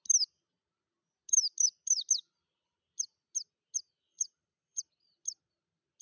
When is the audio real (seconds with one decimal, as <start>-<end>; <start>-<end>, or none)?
0.0-4.1; 4.8-6.0